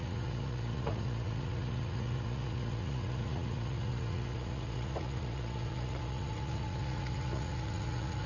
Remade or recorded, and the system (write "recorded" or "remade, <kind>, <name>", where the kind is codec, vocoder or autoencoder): remade, vocoder, Vocos